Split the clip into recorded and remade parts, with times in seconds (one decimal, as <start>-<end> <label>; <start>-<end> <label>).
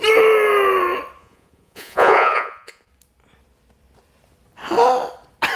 0.0-1.2 recorded; 1.2-2.9 remade; 2.9-5.6 recorded